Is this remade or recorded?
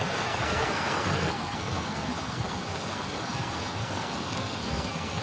remade